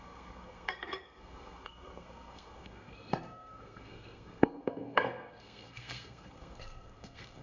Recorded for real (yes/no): no